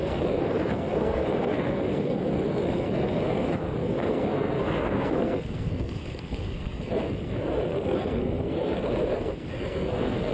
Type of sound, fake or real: fake